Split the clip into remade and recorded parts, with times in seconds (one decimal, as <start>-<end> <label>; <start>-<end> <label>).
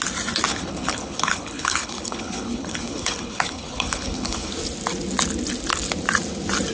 0.0-0.5 recorded; 0.5-4.5 remade; 4.5-6.7 recorded